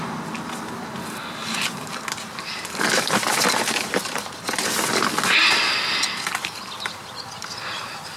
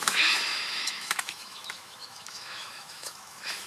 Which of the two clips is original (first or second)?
first